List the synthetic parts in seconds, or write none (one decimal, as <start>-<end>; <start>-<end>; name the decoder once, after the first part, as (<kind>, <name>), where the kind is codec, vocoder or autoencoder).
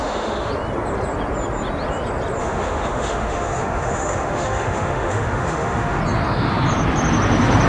0.0-0.5 (autoencoder, DAC-VAE); 2.4-6.0